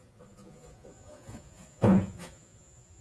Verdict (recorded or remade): remade